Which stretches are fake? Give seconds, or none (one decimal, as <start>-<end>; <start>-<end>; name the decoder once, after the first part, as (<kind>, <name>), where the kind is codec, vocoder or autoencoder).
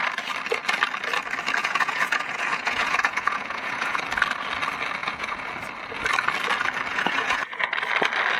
1.6-4.0 (vocoder, Vocos); 5.0-5.5; 6.9-7.7